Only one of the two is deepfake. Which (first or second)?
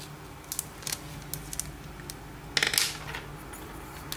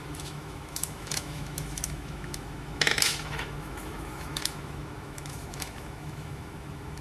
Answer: second